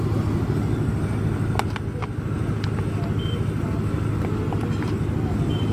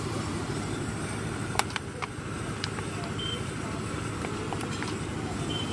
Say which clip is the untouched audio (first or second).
first